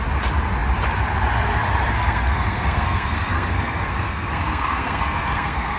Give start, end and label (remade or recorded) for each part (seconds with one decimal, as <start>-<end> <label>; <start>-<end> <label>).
0.0-1.9 recorded; 1.9-5.8 remade